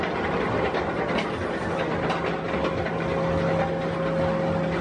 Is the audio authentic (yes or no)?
yes